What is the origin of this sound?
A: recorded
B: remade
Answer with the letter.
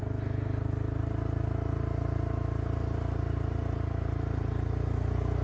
A